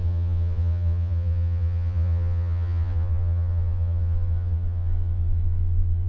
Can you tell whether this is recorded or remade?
remade